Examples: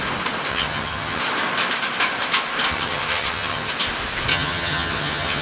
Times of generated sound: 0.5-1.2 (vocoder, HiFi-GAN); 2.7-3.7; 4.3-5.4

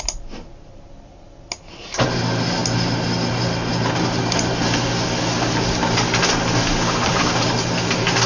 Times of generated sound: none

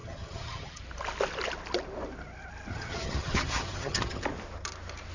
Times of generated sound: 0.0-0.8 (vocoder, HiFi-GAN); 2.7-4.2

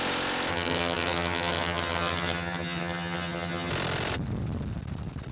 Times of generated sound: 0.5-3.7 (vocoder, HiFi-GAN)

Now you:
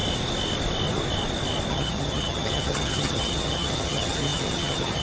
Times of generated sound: 1.7-5.0 (vocoder, HiFi-GAN)

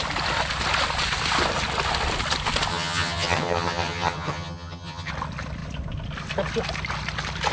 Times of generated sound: 2.7-5.1 (vocoder, HiFi-GAN)